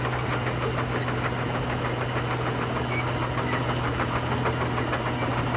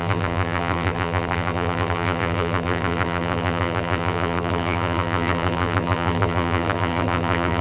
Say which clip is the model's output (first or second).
second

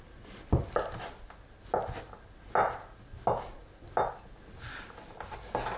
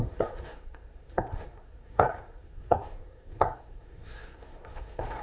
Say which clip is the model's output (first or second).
second